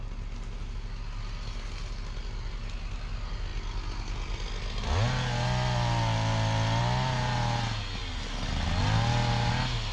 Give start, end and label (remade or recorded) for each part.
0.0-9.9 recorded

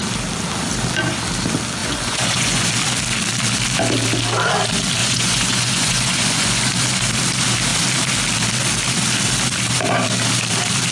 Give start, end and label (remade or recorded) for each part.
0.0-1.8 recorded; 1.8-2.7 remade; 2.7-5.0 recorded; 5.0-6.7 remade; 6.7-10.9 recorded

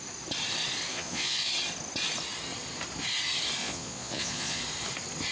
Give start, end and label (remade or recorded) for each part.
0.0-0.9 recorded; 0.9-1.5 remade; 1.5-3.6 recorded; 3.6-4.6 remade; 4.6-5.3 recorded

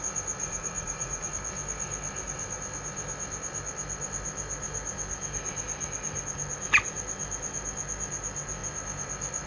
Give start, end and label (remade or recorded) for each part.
0.0-0.4 recorded; 0.4-1.3 remade; 1.3-9.5 recorded

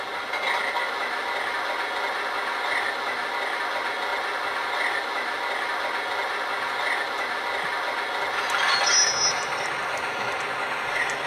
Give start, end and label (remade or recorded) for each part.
0.0-11.3 recorded

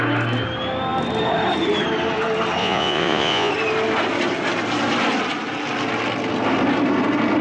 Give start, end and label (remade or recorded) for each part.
0.0-2.6 recorded; 2.6-3.5 remade; 3.5-7.4 recorded